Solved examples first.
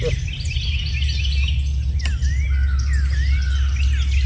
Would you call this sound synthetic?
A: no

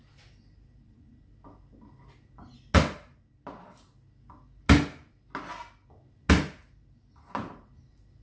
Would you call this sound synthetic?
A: no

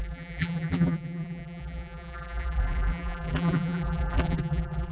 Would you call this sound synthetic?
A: yes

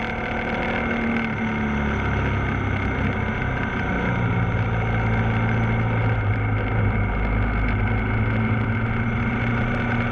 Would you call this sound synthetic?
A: no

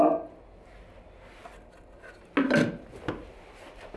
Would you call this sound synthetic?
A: no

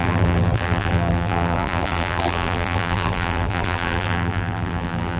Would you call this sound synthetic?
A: yes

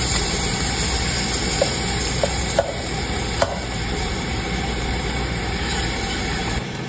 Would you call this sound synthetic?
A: yes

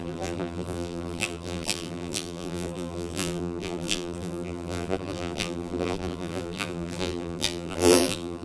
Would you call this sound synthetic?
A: yes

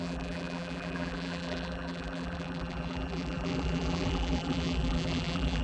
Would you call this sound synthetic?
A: yes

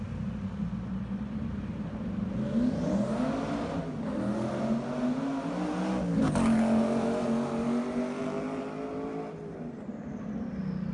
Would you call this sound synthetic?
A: no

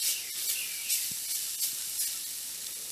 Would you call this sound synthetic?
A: no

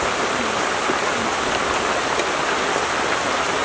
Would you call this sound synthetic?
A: no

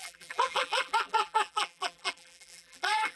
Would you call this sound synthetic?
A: yes